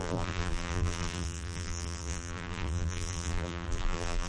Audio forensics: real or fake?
fake